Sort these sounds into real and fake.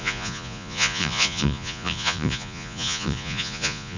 fake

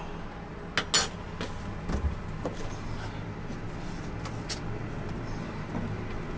real